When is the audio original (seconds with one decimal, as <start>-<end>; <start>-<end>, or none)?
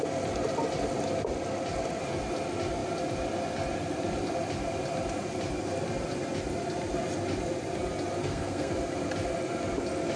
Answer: 0.0-8.2; 8.7-10.2